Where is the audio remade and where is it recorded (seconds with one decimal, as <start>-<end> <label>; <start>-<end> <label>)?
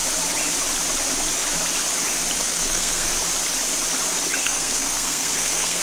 0.0-2.4 recorded; 2.4-3.1 remade; 3.1-4.4 recorded; 4.4-5.8 remade